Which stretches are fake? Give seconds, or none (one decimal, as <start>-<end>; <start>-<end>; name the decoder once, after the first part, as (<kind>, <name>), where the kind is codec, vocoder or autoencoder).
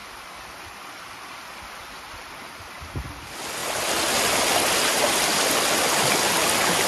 none